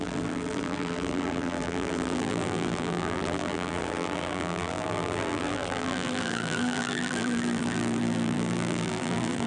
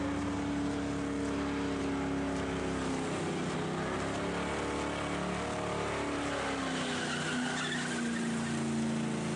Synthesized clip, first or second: first